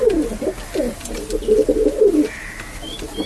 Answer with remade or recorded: recorded